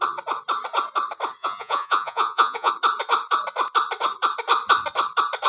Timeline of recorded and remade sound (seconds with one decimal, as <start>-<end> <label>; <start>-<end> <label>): 0.0-1.4 recorded; 1.4-2.7 remade; 2.7-5.5 recorded